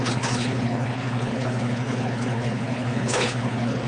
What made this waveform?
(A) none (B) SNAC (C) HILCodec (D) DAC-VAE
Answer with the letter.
C